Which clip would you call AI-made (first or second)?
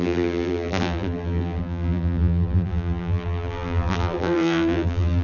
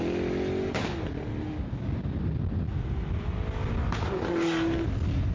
first